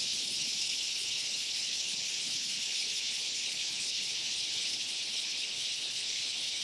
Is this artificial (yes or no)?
yes